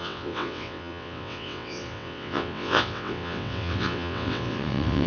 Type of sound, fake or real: fake